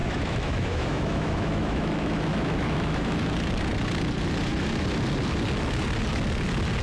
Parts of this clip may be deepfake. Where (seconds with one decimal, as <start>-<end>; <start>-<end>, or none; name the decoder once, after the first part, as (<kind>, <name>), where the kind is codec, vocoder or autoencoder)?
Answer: 0.0-3.3 (autoencoder, DAC-VAE)

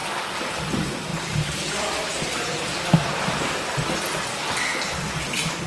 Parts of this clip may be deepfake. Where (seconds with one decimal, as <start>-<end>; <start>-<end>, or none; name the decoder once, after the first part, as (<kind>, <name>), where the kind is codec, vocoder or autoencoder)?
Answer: none

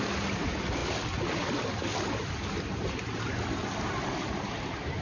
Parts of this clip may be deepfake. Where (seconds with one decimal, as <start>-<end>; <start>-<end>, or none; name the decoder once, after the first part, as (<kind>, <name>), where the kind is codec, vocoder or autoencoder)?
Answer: none

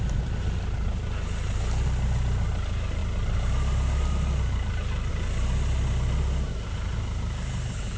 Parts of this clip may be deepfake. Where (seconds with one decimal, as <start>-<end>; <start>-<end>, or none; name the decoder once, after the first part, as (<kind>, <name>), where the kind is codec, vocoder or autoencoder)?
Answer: none

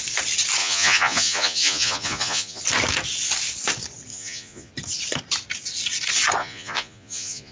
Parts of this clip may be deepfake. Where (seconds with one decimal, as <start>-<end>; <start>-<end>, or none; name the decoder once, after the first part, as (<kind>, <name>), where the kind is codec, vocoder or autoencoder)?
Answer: 0.6-2.6 (vocoder, Vocos); 4.1-4.7; 6.4-7.5